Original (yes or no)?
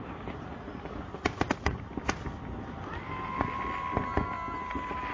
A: yes